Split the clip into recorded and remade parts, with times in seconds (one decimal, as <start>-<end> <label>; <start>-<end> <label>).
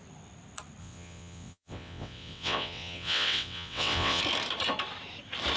0.0-0.8 recorded; 0.8-4.2 remade; 4.2-5.6 recorded